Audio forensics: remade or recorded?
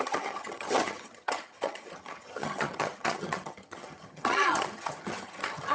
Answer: remade